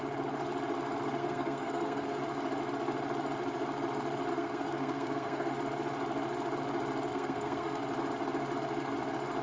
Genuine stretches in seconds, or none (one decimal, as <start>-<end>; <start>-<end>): 0.0-1.2; 2.2-4.3; 5.5-7.1; 7.8-9.4